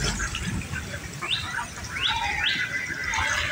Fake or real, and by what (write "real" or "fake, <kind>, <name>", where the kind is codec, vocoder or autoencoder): real